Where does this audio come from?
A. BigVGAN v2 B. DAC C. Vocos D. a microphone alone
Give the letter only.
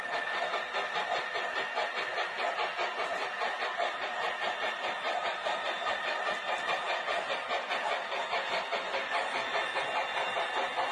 D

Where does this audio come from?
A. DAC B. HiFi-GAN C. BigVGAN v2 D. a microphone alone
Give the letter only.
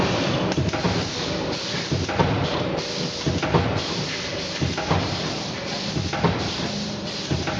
C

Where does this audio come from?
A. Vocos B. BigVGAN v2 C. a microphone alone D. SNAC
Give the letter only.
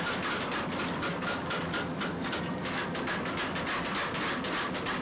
C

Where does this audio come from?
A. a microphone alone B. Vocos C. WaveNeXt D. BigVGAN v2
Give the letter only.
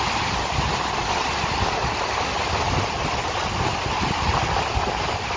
A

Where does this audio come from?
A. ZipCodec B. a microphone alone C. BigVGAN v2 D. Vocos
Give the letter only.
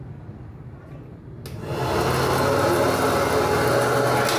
B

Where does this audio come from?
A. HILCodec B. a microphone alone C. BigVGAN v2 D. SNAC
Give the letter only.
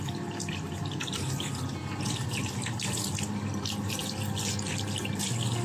B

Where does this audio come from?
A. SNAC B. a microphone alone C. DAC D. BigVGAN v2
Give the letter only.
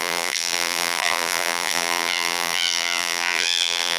D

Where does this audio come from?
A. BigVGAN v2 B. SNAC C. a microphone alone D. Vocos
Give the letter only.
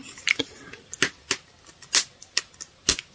C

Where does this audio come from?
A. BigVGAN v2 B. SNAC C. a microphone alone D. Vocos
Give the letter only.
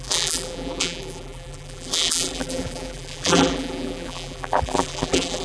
A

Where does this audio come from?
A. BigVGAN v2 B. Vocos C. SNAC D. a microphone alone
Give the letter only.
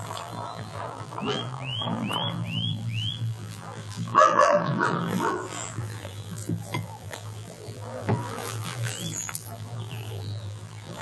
A